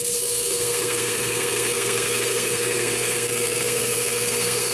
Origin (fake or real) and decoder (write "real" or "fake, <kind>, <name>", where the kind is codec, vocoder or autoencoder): fake, codec, SNAC